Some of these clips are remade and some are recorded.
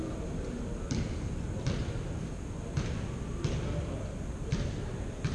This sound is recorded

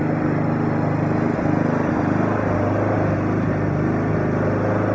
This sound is recorded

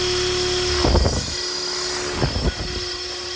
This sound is recorded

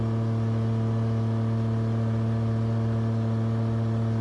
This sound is recorded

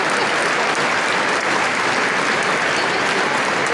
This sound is recorded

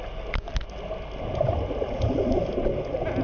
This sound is recorded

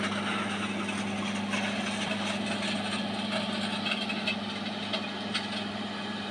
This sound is recorded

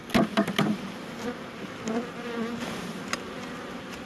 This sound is recorded